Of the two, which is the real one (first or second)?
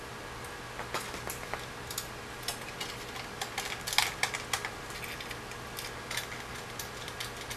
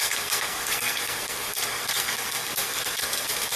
first